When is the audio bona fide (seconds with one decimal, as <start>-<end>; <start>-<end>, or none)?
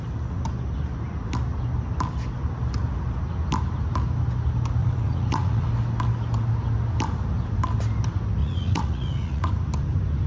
0.0-4.8; 5.7-8.4; 9.5-10.3